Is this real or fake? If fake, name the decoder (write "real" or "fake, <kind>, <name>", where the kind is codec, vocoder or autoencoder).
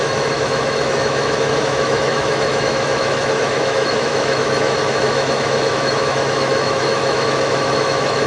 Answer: fake, autoencoder, DAC-VAE